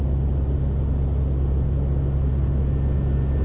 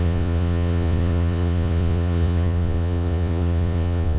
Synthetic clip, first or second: second